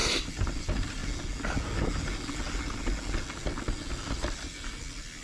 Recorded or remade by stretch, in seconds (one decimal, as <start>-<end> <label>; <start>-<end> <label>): 0.0-1.0 remade; 1.0-4.1 recorded; 4.1-5.2 remade